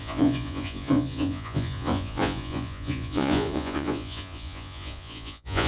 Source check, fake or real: fake